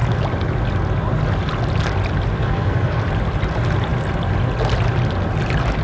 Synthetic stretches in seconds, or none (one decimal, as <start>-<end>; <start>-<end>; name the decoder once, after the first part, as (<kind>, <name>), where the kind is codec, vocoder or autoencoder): 2.4-3.0 (codec, SNAC)